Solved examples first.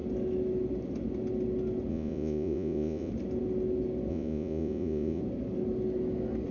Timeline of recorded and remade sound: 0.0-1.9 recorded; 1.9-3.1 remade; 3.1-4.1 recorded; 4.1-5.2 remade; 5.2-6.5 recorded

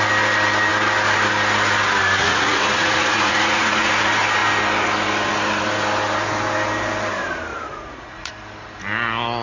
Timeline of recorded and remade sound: 0.0-2.2 recorded; 2.2-3.9 remade; 3.9-7.5 recorded; 7.5-8.3 remade; 8.3-9.4 recorded

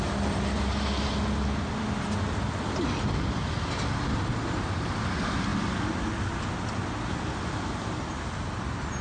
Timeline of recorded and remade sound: 0.0-9.0 recorded

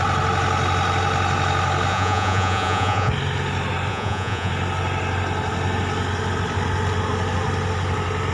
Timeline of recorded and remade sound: 0.0-1.9 recorded; 1.9-3.1 remade; 3.1-3.9 recorded; 3.9-4.5 remade; 4.5-8.3 recorded